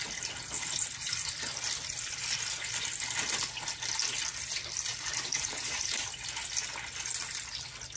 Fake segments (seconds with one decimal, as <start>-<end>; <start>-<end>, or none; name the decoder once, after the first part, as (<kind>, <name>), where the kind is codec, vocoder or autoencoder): 4.9-6.1 (vocoder, BigVGAN v2)